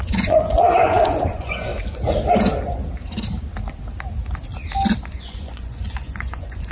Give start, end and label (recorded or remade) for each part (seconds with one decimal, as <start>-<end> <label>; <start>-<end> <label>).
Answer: 0.0-1.7 remade; 1.7-5.0 recorded; 5.0-6.7 remade